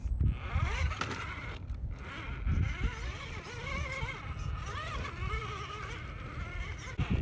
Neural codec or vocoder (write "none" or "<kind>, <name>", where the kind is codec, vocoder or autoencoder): none